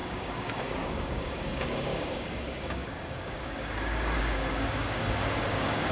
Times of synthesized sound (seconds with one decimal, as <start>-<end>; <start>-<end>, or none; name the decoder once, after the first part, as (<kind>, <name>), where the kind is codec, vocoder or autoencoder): 0.0-5.9 (codec, DAC)